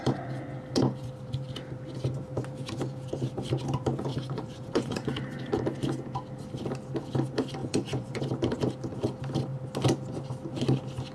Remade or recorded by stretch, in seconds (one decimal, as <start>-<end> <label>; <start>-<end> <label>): 0.0-4.1 recorded; 4.1-5.1 remade; 5.1-7.6 recorded; 7.6-8.2 remade; 8.2-11.1 recorded